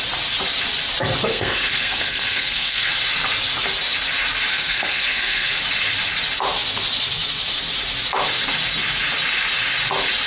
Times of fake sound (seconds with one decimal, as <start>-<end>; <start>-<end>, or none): 1.3-2.9; 4.5-5.6